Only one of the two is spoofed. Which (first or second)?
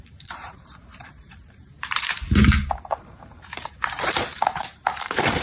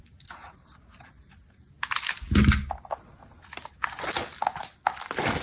first